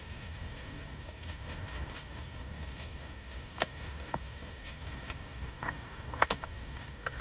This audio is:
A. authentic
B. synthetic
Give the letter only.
B